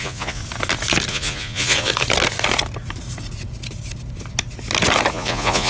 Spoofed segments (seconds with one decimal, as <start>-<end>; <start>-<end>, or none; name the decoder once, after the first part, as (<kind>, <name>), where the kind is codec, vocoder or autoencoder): 0.0-0.4 (vocoder, Vocos); 1.1-1.9; 5.1-5.7